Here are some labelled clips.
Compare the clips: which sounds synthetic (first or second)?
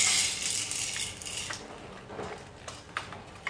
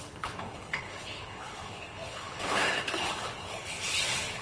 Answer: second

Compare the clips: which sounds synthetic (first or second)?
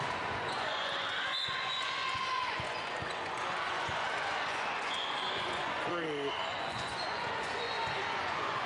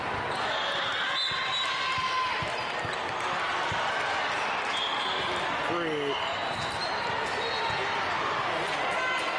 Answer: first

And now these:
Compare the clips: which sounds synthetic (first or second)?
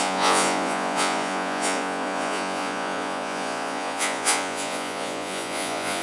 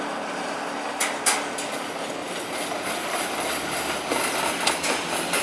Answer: first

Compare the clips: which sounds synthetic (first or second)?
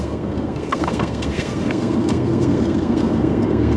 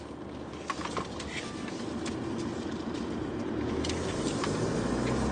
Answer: first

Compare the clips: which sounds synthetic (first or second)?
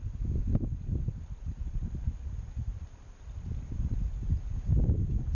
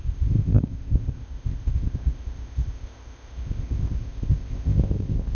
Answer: second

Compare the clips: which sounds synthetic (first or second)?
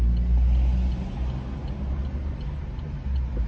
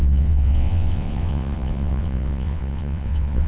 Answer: second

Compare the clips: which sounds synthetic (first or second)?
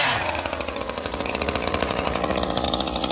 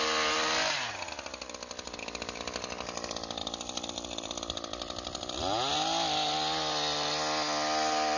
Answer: first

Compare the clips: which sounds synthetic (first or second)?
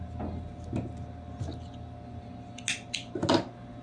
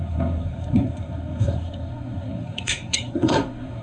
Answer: second